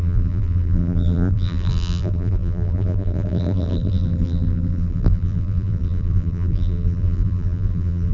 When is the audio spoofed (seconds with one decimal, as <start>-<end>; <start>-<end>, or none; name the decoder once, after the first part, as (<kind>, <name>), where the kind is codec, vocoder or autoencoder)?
0.0-8.1 (vocoder, BigVGAN v2)